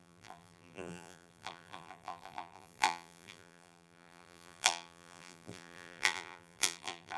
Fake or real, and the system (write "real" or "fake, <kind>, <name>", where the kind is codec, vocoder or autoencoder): fake, vocoder, BigVGAN v2